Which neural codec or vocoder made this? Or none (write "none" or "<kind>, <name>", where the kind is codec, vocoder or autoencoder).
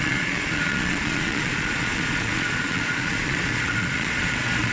vocoder, Vocos